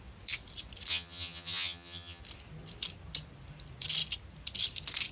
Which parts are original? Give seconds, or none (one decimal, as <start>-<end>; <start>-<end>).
0.0-0.9; 2.2-5.1